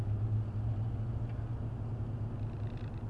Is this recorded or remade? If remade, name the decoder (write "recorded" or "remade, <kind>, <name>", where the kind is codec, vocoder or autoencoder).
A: recorded